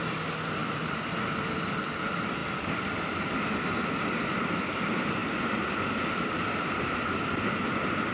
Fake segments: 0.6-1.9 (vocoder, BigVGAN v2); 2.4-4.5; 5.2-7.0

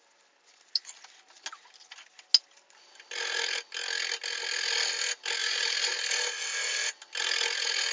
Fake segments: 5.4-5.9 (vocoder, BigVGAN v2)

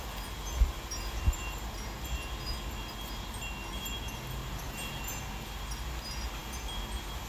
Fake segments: 4.4-5.2 (vocoder, BigVGAN v2)

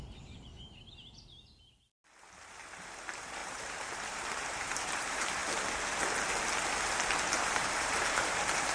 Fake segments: 0.0-0.5 (vocoder, BigVGAN v2); 2.5-5.4; 7.4-8.7